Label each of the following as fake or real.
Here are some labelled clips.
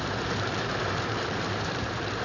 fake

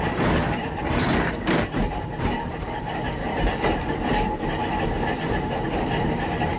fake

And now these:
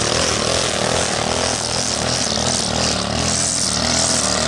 real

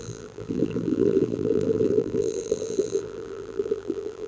fake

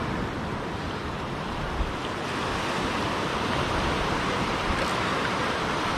fake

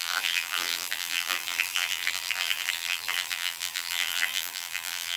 fake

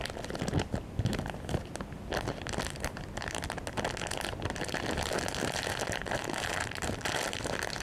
real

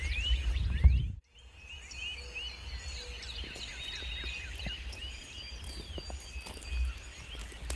real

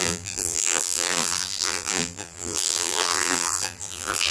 fake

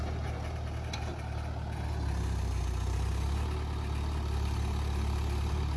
real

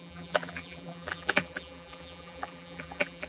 fake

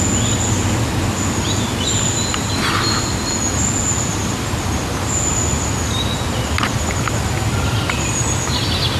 real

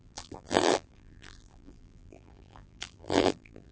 fake